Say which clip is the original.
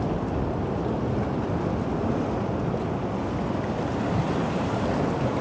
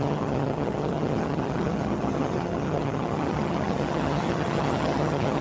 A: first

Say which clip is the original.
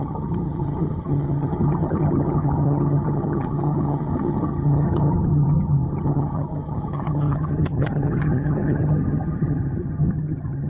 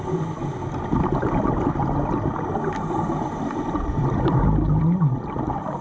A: second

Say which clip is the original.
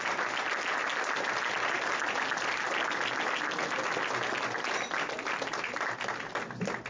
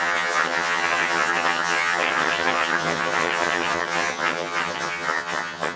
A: first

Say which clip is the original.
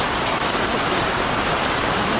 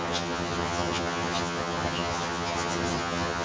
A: first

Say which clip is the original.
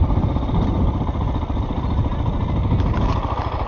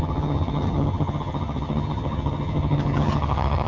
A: first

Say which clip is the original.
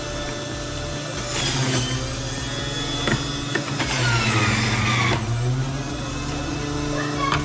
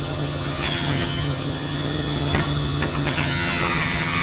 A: first